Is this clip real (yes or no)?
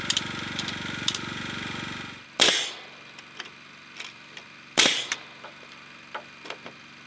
yes